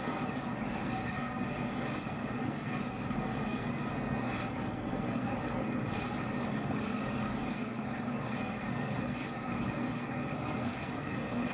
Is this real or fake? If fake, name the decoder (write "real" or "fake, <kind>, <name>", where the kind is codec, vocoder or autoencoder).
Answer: fake, codec, SNAC